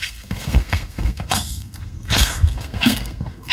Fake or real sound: fake